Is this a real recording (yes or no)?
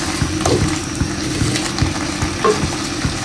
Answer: yes